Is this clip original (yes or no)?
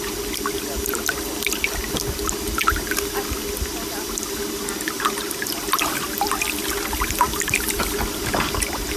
yes